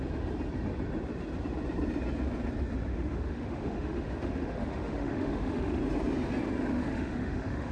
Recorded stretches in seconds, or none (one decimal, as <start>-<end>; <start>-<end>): 0.0-2.9; 5.8-6.7